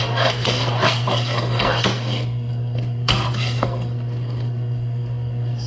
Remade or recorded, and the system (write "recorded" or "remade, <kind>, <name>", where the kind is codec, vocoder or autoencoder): remade, codec, SNAC